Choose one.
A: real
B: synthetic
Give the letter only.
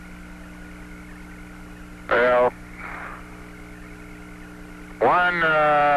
A